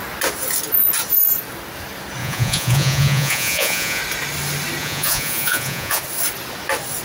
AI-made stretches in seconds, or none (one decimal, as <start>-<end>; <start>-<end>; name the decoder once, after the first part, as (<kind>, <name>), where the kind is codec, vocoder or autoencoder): 2.2-4.0 (vocoder, Vocos); 4.8-6.0